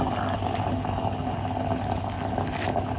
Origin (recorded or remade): recorded